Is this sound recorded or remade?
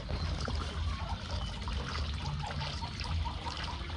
recorded